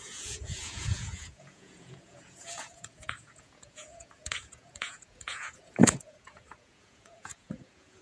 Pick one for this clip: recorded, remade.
remade